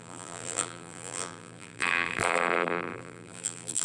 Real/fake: fake